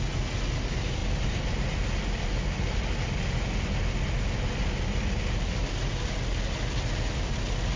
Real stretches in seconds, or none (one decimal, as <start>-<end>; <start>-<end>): 0.0-7.8